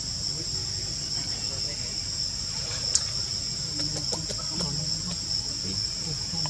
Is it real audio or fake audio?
real